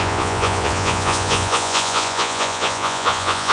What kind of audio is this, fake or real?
fake